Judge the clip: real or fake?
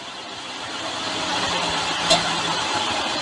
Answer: real